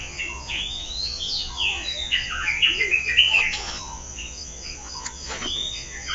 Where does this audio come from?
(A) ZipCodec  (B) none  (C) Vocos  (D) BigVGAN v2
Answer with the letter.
C